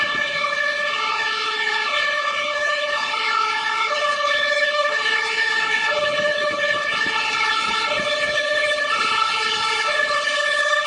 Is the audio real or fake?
fake